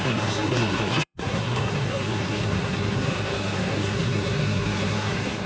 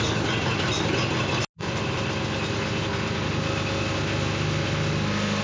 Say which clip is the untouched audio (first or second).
second